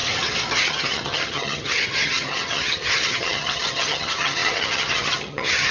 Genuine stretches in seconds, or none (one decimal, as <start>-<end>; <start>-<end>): 0.0-0.7